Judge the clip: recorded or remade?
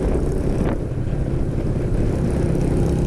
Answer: recorded